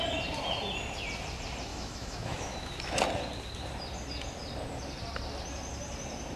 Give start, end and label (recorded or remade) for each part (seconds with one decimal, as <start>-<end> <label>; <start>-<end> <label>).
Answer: 0.0-1.7 recorded; 1.7-3.0 remade; 3.0-6.4 recorded